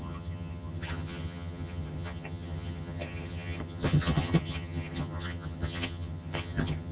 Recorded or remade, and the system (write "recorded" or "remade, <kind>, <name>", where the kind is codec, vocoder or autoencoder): remade, vocoder, HiFi-GAN